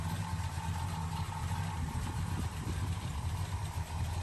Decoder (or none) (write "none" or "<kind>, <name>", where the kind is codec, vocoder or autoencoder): none